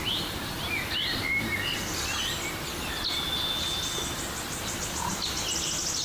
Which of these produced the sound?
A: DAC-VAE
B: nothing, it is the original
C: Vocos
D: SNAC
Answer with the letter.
B